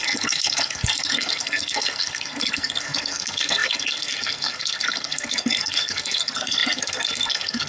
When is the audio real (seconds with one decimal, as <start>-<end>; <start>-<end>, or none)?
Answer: none